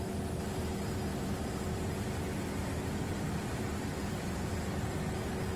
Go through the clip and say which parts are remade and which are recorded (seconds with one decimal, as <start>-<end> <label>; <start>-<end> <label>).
0.0-1.1 recorded; 1.1-4.5 remade; 4.5-5.6 recorded